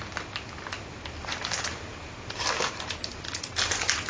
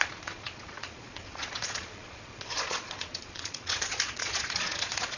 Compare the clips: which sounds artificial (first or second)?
second